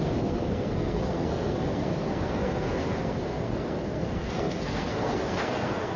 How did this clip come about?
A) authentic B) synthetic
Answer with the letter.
B